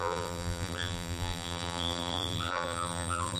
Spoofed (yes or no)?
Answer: yes